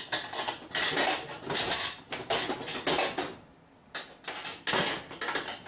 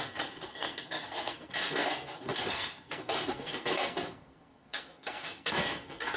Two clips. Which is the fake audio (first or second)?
second